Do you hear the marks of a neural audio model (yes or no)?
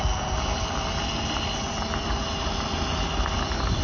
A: no